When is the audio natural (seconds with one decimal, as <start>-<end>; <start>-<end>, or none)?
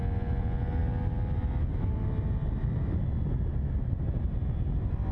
0.0-5.1